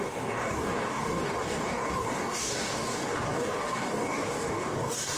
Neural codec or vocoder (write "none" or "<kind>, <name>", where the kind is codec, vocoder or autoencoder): codec, DAC